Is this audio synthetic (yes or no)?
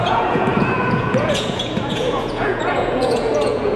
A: yes